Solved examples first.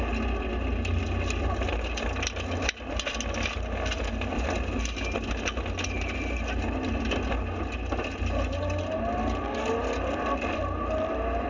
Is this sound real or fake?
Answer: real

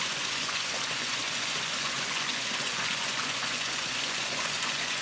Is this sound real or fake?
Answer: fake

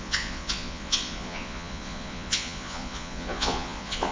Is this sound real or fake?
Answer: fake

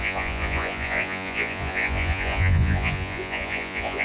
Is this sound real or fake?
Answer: fake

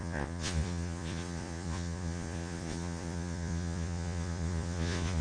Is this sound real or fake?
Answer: fake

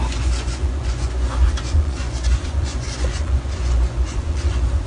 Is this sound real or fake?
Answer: fake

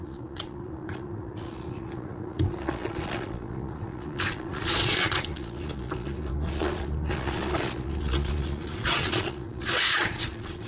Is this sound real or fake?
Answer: fake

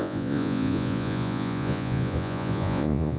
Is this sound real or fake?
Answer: fake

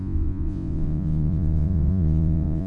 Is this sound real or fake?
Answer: fake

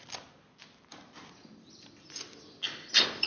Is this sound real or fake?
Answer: real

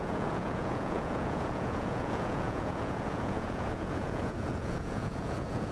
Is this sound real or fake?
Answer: fake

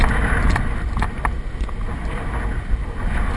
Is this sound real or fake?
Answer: real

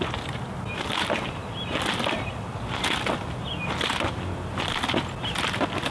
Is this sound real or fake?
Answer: real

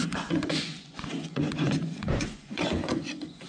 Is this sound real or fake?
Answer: fake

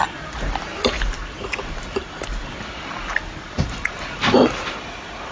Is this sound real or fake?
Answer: real